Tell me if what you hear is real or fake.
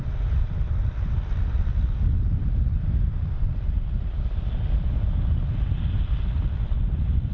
real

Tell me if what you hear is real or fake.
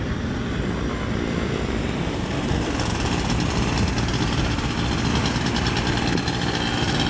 real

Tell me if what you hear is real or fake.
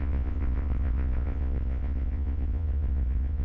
fake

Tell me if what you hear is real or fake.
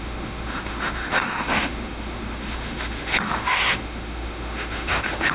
fake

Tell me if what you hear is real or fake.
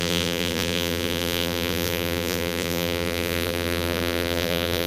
fake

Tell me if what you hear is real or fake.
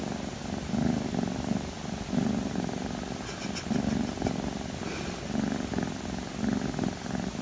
real